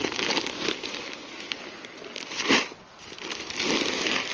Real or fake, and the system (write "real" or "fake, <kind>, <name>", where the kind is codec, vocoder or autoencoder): real